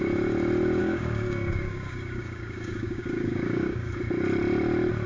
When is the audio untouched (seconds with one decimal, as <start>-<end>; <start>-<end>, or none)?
0.0-0.8; 3.9-5.1